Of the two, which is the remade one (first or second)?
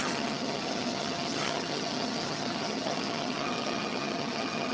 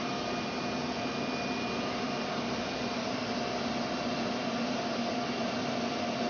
first